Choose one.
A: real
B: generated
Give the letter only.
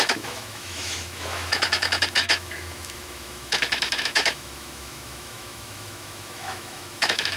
B